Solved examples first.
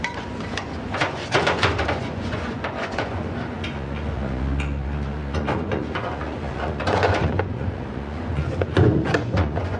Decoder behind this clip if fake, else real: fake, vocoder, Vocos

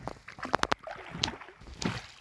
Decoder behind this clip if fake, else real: real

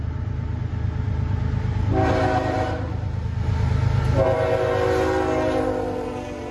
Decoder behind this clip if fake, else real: real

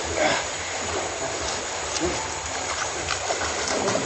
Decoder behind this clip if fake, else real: real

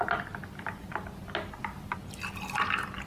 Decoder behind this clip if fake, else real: real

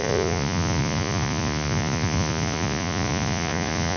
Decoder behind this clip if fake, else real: fake, vocoder, Vocos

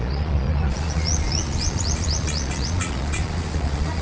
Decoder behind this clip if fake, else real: fake, vocoder, Vocos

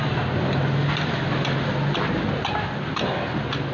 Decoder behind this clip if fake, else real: real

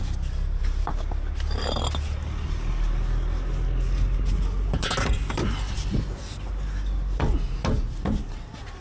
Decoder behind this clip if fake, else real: real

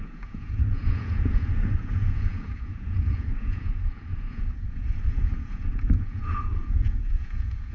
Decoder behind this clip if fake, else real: fake, vocoder, Vocos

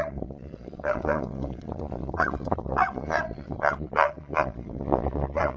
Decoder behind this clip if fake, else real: fake, vocoder, Vocos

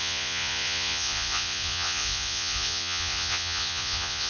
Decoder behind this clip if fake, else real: fake, vocoder, Vocos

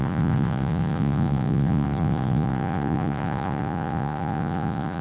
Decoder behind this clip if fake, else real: fake, vocoder, Vocos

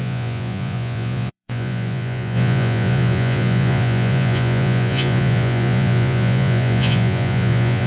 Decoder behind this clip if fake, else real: fake, vocoder, Vocos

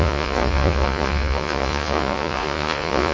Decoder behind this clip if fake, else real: fake, vocoder, Vocos